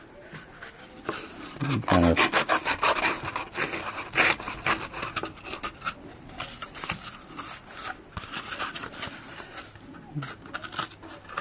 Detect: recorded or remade recorded